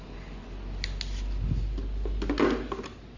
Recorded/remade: recorded